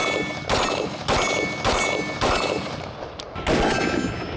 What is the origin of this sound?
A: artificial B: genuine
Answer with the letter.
B